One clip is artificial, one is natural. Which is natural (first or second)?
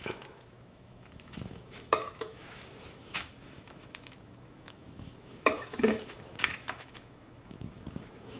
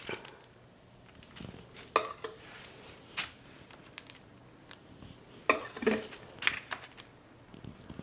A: second